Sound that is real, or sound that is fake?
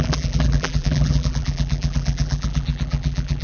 fake